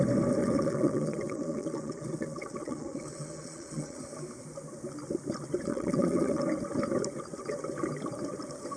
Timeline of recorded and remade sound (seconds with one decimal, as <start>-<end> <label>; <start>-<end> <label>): 0.0-0.4 recorded; 0.4-4.0 remade; 4.0-5.7 recorded; 5.7-6.4 remade; 6.4-8.8 recorded

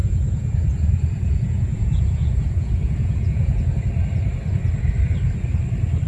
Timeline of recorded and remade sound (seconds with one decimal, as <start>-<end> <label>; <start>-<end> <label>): 0.0-3.7 remade; 3.7-6.1 recorded